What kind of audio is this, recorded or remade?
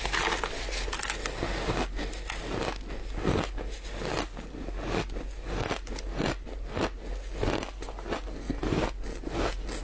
recorded